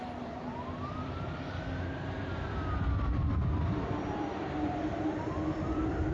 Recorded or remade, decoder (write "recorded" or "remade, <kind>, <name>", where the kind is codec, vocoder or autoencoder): remade, vocoder, BigVGAN v2